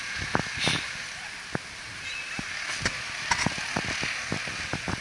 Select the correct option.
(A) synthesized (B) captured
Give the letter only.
B